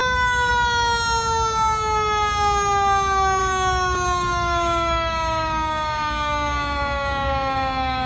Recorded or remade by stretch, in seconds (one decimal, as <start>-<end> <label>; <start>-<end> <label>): 0.0-0.5 remade; 0.5-3.4 recorded; 3.4-8.1 remade